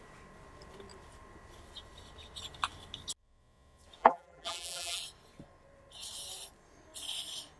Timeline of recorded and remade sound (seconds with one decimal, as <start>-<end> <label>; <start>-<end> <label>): 0.0-4.0 recorded; 4.0-5.0 remade; 5.0-7.6 recorded